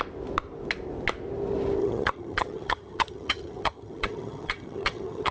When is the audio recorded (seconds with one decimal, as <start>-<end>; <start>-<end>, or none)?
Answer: 0.0-1.8